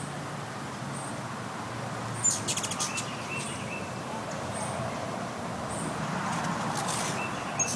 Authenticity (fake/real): real